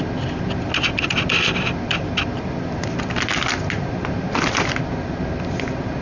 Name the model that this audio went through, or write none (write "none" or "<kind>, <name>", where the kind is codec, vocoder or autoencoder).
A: none